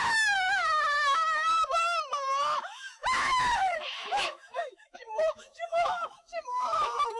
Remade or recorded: remade